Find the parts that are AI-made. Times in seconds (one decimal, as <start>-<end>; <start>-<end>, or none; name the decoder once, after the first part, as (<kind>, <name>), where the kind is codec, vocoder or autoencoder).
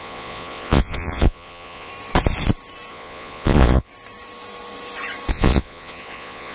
0.0-1.9 (vocoder, Vocos); 2.9-3.9; 5.3-6.5